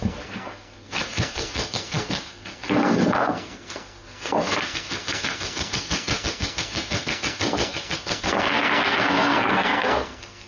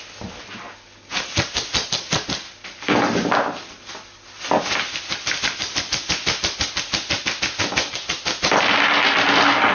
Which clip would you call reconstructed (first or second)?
first